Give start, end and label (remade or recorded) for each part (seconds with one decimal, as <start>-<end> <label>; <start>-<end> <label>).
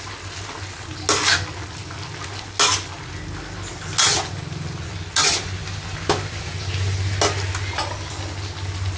0.0-9.0 recorded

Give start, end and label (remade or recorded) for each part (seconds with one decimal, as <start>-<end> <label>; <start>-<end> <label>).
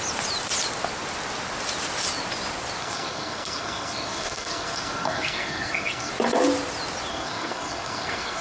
0.0-2.8 recorded; 2.8-6.1 remade; 6.1-7.1 recorded; 7.1-8.4 remade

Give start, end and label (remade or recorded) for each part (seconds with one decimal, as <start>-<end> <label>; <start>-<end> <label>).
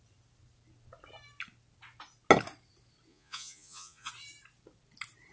0.0-3.1 recorded; 3.1-4.1 remade; 4.1-5.3 recorded